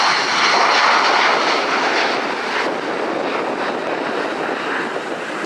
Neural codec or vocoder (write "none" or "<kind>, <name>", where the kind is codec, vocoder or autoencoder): none